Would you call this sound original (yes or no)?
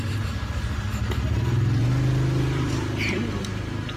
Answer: yes